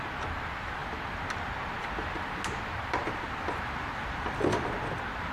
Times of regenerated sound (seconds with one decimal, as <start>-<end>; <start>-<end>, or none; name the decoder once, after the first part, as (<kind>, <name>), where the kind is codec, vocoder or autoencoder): none